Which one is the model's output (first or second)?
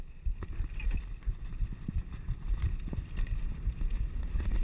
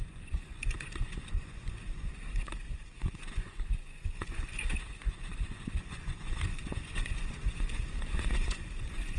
second